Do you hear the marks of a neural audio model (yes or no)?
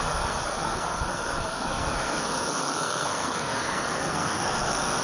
yes